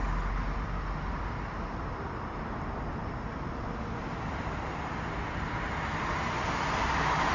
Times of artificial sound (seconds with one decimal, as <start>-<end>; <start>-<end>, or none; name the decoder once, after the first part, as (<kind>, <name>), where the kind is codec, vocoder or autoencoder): none